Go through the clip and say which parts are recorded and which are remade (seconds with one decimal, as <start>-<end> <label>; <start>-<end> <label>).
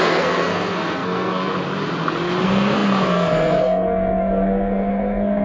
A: 0.0-1.5 remade; 1.5-2.4 recorded; 2.4-5.4 remade